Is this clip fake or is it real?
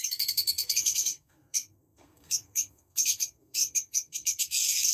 fake